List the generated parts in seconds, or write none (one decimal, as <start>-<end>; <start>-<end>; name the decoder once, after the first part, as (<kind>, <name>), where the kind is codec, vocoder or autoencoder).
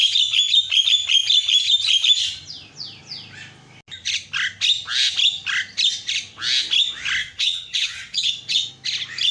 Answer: 7.2-8.7 (vocoder, WaveNeXt)